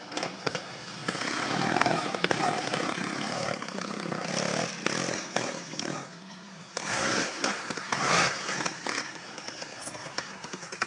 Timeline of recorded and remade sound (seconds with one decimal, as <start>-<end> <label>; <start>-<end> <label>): 0.0-4.3 remade; 4.3-5.1 recorded; 5.1-10.9 remade